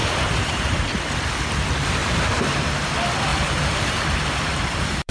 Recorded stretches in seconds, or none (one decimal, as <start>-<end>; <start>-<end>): 0.8-2.0; 2.9-3.3